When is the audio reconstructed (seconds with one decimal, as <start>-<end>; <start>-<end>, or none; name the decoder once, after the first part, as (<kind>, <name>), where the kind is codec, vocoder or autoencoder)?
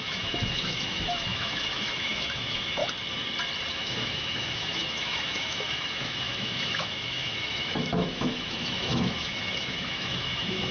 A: 0.0-2.8 (autoencoder, DAC-VAE); 3.7-10.7